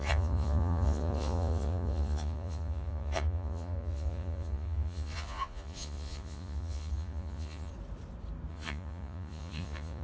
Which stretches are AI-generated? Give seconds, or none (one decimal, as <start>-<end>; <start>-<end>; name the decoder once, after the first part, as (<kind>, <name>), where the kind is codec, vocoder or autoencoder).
0.0-7.7 (vocoder, Vocos); 8.5-10.0